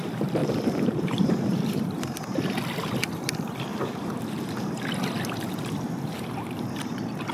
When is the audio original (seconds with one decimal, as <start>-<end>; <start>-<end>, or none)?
0.0-0.4; 2.2-3.7; 4.4-6.1